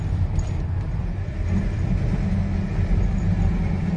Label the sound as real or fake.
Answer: real